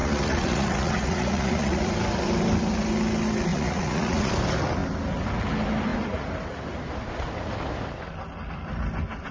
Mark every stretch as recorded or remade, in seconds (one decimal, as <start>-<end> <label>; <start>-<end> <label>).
0.0-1.9 remade; 1.9-3.5 recorded; 3.5-4.3 remade; 4.3-9.3 recorded